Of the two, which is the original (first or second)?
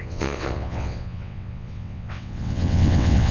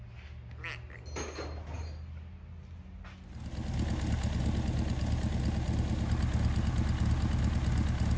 second